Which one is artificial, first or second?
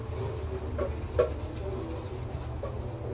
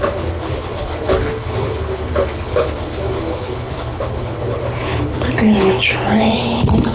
second